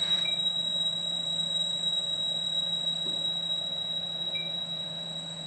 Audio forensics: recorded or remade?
remade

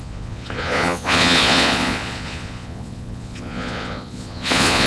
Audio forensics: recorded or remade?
remade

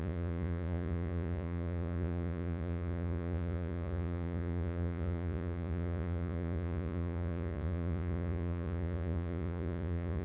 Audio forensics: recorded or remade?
remade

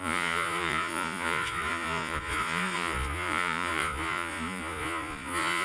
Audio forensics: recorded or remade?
remade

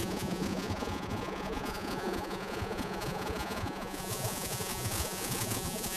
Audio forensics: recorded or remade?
remade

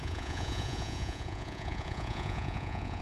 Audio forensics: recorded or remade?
remade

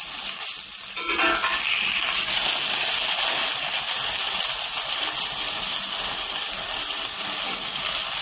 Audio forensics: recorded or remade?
recorded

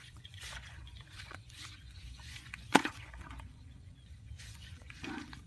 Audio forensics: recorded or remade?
remade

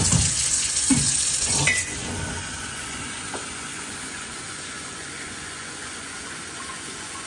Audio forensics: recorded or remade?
remade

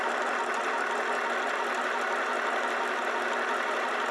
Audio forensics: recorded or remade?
recorded